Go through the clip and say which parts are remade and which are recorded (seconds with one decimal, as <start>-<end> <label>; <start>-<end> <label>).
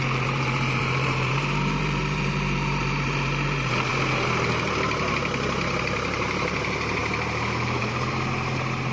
0.0-3.9 remade; 3.9-5.8 recorded; 5.8-7.0 remade; 7.0-7.8 recorded; 7.8-8.9 remade